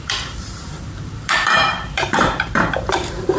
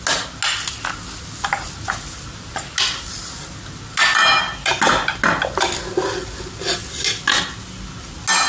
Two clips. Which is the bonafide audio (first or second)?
second